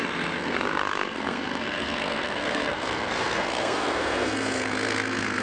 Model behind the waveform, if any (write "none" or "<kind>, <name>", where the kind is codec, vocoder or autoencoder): codec, SNAC